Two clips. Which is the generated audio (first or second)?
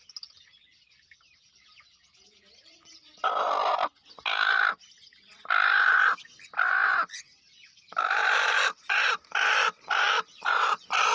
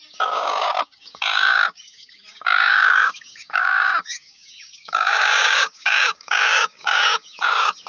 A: second